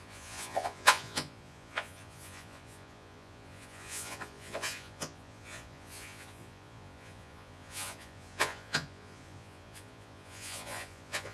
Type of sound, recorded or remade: remade